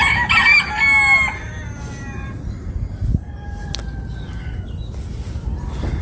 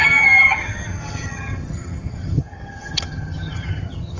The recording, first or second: first